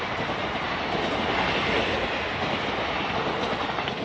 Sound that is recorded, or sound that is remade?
recorded